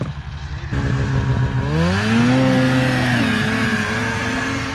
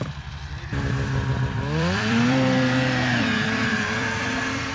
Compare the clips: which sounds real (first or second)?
first